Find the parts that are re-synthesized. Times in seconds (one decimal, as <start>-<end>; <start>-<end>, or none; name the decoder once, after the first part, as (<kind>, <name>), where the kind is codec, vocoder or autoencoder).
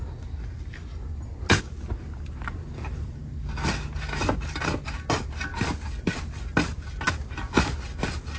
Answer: none